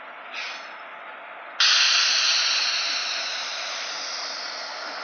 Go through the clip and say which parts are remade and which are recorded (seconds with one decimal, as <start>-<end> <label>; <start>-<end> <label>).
0.0-5.0 recorded